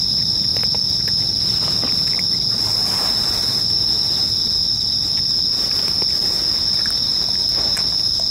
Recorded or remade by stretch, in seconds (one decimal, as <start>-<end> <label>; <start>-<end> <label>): 0.0-8.3 recorded